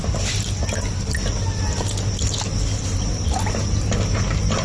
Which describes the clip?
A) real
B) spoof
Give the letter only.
A